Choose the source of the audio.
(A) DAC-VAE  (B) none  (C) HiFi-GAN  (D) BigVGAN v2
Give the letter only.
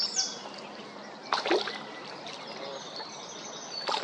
B